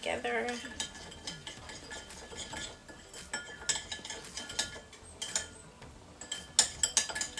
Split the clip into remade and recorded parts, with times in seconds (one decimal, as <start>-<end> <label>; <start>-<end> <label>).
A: 0.0-7.4 recorded